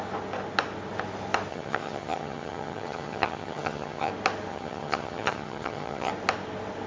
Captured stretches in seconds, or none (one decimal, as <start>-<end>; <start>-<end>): 0.0-1.5; 4.1-4.5; 6.1-6.9